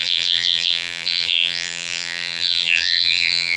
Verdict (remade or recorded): remade